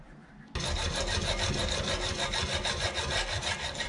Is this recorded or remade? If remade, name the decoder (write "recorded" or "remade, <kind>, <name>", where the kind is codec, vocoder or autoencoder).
recorded